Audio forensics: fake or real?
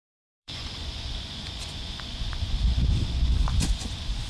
fake